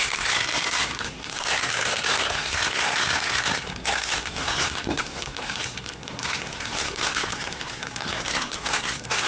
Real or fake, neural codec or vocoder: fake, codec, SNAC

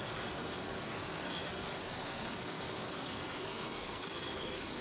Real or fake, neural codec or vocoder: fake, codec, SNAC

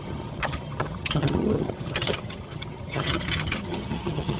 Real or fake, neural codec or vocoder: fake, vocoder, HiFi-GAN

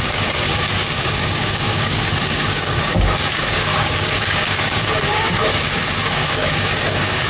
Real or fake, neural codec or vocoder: fake, codec, DAC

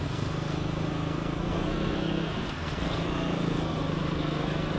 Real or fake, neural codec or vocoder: fake, codec, SNAC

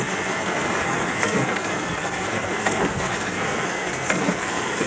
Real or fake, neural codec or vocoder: fake, codec, SNAC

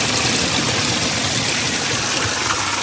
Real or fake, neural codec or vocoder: real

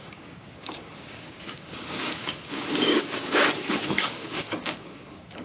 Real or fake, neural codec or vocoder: fake, codec, DAC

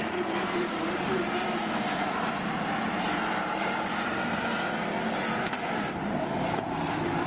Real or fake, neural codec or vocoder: fake, vocoder, BigVGAN v2